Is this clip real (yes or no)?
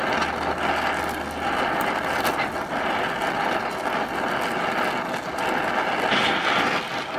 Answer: yes